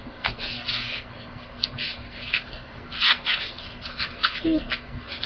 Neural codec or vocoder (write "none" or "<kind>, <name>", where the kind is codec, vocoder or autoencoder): codec, SNAC